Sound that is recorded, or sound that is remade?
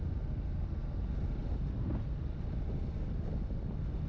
recorded